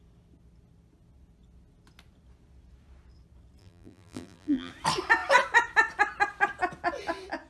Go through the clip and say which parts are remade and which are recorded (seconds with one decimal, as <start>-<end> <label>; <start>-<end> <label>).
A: 0.0-3.6 recorded; 3.6-4.7 remade; 4.7-7.5 recorded